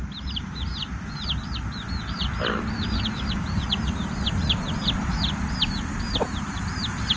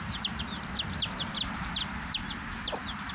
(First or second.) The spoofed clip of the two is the first